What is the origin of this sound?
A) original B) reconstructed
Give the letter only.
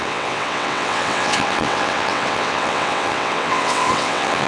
B